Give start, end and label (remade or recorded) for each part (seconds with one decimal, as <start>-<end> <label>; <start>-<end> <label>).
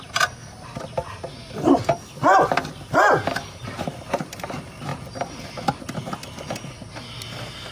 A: 0.0-0.4 remade; 0.4-4.1 recorded; 4.1-4.9 remade; 4.9-7.7 recorded